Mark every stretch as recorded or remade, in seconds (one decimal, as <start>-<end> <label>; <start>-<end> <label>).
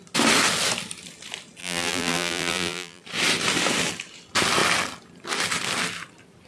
0.0-1.6 recorded; 1.6-3.0 remade; 3.0-6.5 recorded